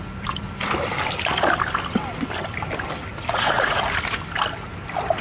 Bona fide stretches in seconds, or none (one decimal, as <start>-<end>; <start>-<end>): 0.0-3.1; 3.8-5.2